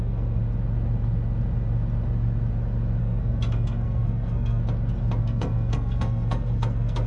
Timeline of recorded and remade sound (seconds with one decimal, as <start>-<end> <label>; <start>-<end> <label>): 0.0-0.4 remade; 0.4-3.0 recorded; 3.0-4.6 remade; 4.6-5.2 recorded; 5.2-7.1 remade

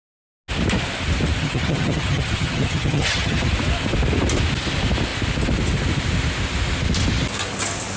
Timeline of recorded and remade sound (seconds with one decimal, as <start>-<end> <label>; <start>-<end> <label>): 0.0-1.4 recorded; 1.4-3.5 remade; 3.5-8.0 recorded

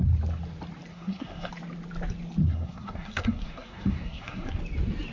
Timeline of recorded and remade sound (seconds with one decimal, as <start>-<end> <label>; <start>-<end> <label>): 0.0-0.9 recorded; 0.9-1.5 remade; 1.5-2.4 recorded; 2.4-4.6 remade; 4.6-5.1 recorded

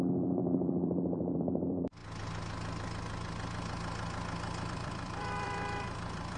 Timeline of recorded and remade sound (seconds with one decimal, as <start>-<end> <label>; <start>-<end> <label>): 0.0-2.0 remade; 2.0-4.7 recorded; 4.7-6.4 remade

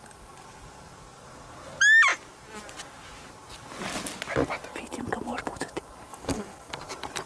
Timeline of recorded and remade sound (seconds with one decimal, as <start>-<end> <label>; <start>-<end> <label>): 0.0-6.1 recorded; 6.1-6.7 remade; 6.7-7.3 recorded

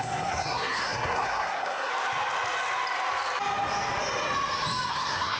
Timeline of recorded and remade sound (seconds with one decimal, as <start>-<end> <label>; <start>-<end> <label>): 0.0-1.9 remade; 1.9-4.9 recorded; 4.9-5.4 remade